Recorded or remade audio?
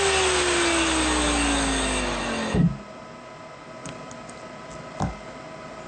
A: recorded